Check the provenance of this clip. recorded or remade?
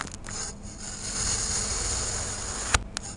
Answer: recorded